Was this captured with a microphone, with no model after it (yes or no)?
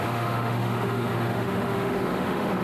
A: no